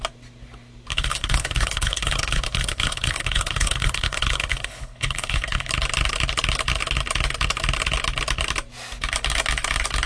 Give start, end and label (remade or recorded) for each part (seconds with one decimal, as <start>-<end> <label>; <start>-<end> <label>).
0.0-0.9 recorded; 0.9-5.7 remade; 5.7-10.1 recorded

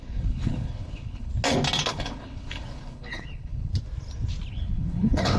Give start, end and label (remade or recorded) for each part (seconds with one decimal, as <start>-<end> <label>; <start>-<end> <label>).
0.0-1.3 remade; 1.3-1.9 recorded; 1.9-3.7 remade; 3.7-4.5 recorded; 4.5-5.4 remade

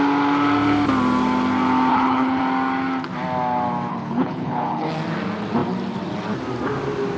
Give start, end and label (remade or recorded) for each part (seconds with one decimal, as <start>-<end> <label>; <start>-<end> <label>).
0.0-1.9 recorded; 1.9-2.4 remade; 2.4-3.9 recorded; 3.9-4.9 remade; 4.9-7.2 recorded

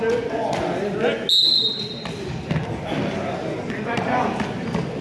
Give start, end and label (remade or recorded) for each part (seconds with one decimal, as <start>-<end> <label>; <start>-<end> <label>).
0.0-5.0 recorded

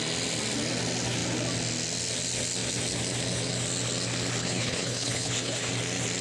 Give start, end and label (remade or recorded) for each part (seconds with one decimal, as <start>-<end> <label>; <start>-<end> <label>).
0.0-4.4 recorded; 4.4-5.7 remade; 5.7-6.2 recorded

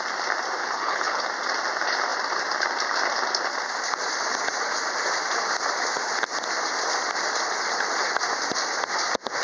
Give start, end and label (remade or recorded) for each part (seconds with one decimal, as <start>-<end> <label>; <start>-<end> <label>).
0.0-0.6 recorded; 0.6-1.2 remade; 1.2-9.4 recorded

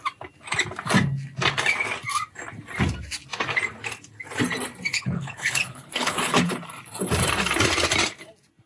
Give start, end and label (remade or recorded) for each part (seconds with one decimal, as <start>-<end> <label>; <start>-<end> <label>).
0.0-4.9 recorded; 4.9-6.5 remade; 6.5-8.7 recorded